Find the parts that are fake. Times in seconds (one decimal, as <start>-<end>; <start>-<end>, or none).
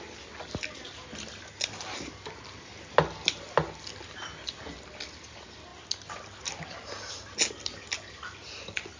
none